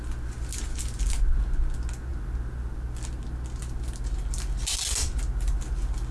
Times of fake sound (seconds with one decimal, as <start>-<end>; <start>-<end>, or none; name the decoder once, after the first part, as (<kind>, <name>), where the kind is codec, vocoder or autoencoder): none